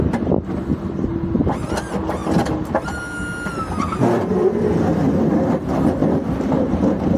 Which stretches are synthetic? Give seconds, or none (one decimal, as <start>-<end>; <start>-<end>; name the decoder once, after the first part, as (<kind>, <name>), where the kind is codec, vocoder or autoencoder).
6.0-6.6 (vocoder, BigVGAN v2)